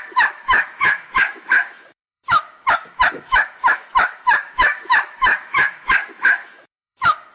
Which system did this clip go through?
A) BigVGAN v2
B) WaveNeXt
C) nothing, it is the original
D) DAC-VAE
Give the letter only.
D